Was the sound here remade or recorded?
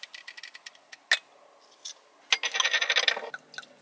recorded